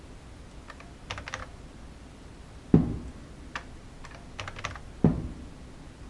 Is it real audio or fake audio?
real